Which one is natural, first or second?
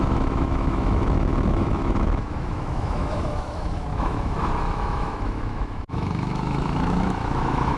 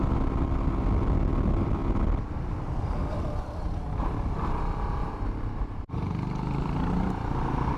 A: second